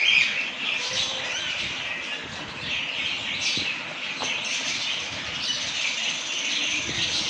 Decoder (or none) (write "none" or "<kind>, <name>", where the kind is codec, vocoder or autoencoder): none